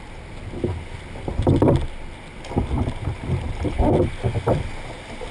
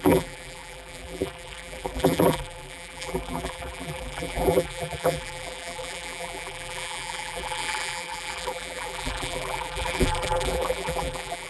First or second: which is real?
first